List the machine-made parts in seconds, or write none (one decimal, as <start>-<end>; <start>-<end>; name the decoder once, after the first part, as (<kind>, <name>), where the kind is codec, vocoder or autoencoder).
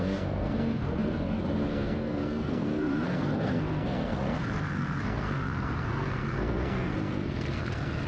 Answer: 0.0-8.1 (codec, SNAC)